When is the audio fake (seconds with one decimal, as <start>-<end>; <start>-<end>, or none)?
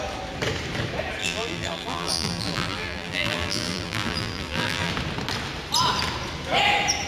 1.2-4.9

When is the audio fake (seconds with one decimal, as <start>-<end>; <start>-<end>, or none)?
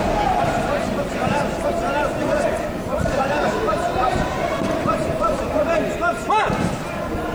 2.9-5.4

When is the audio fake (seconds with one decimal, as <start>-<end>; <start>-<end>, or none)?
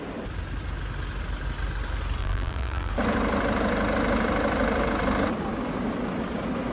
2.2-2.9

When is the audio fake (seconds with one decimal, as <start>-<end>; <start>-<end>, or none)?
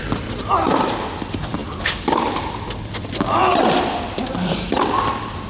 none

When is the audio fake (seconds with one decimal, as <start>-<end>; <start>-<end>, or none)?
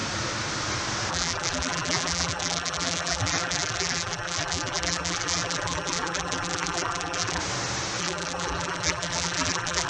1.1-7.4; 8.0-9.9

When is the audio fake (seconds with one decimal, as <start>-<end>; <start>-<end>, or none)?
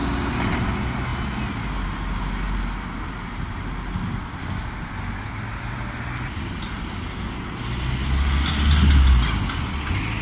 none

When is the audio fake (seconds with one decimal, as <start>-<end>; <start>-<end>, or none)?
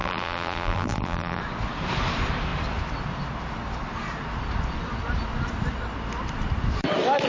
0.0-1.4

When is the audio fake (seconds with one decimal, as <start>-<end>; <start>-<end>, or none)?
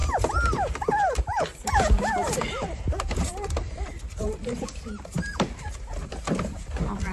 0.0-7.1